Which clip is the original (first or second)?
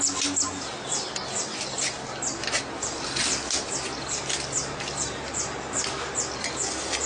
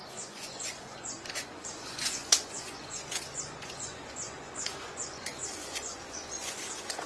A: first